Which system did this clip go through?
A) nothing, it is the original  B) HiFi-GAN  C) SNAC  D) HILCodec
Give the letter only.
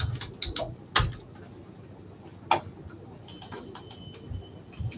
A